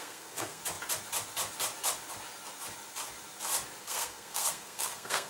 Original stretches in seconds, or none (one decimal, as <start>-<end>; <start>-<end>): 0.6-3.8